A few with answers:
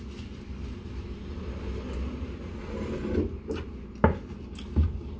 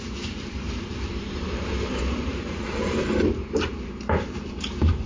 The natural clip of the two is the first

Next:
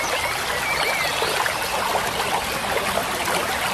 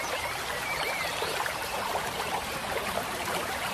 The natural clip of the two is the first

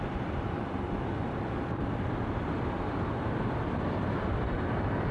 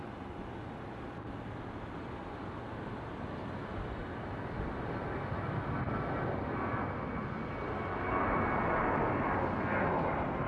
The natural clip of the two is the second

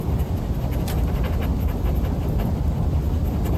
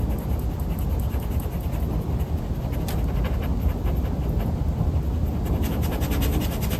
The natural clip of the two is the second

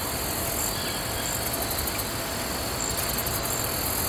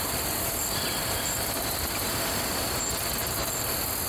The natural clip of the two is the first